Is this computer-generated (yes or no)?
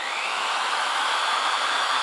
yes